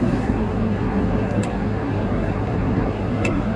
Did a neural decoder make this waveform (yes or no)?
yes